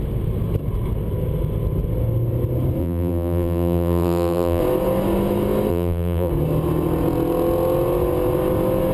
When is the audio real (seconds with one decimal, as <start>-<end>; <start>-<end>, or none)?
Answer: 0.0-2.8; 4.6-5.7; 6.3-8.9